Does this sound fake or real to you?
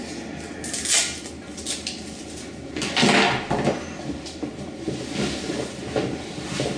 real